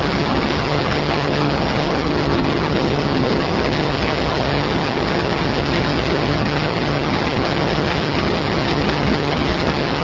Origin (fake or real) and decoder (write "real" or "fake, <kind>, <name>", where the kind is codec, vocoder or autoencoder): fake, vocoder, HiFi-GAN